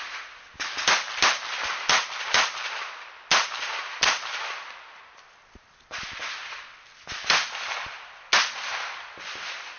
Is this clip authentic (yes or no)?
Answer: yes